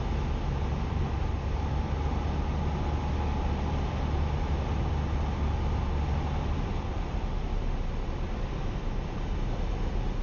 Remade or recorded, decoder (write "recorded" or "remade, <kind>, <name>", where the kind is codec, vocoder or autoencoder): recorded